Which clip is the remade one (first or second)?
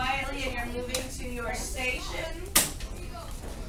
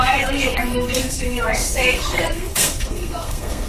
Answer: second